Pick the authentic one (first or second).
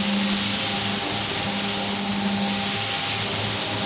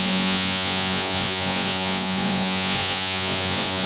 first